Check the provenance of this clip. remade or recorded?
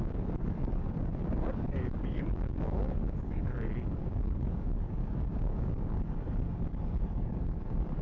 remade